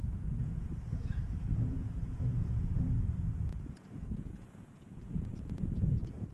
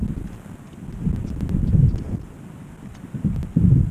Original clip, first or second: second